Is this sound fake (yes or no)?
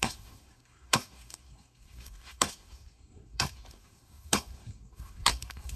yes